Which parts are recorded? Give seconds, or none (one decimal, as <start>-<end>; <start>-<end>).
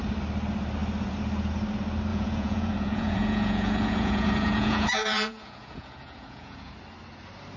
0.0-2.1; 6.7-7.6